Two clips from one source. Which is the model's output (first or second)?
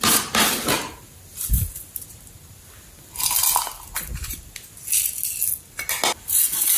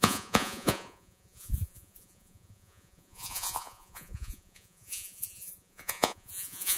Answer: second